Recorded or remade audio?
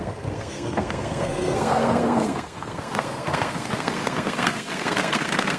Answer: remade